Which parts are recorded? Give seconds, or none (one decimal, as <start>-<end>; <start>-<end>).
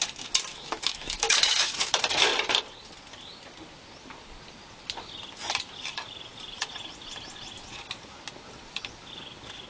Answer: 0.0-0.5; 1.9-9.7